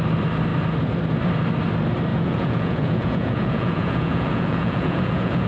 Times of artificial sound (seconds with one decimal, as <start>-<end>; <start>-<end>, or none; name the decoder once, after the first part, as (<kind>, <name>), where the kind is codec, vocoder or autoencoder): 2.1-5.5 (vocoder, Vocos)